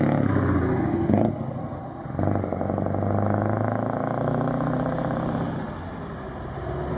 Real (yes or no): yes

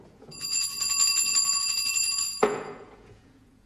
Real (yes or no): no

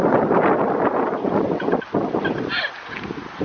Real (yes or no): yes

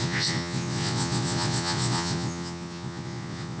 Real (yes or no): no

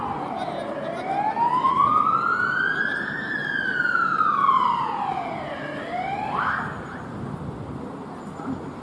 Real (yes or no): yes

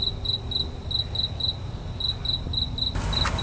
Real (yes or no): yes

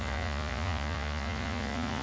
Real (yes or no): no